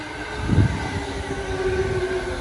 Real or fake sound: real